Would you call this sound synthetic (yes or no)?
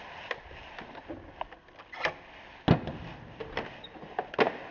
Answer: no